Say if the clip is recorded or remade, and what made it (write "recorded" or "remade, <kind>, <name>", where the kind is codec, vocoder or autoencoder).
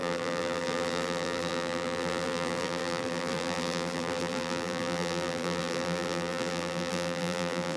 remade, vocoder, BigVGAN v2